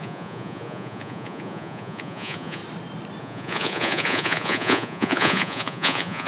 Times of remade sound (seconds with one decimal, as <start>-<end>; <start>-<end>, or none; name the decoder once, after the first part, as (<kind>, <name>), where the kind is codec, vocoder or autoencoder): 0.0-2.6 (vocoder, Vocos); 3.2-6.3